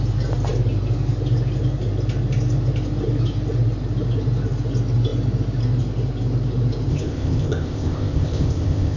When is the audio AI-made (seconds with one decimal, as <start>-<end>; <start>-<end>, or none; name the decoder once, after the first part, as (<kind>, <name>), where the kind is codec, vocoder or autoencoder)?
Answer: 6.9-9.0 (codec, ZipCodec)